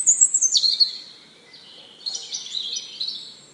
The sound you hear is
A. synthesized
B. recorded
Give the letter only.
A